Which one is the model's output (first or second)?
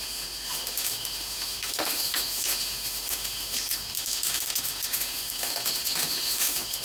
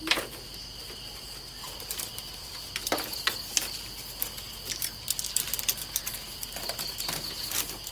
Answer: first